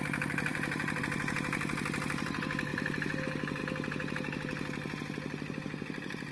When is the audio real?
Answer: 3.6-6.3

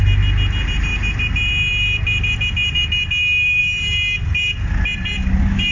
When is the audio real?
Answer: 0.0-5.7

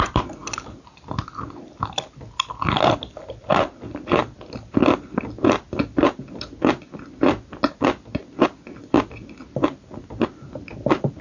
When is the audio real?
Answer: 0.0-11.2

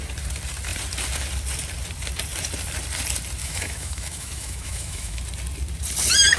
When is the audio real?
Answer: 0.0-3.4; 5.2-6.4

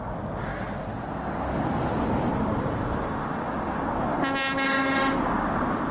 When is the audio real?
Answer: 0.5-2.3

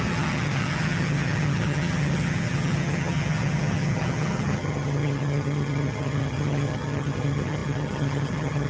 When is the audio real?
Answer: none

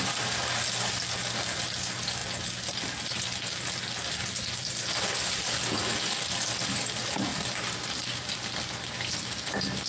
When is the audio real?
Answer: 0.0-9.9

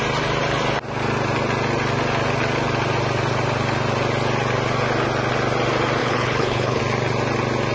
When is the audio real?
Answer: 0.0-6.0; 6.8-7.7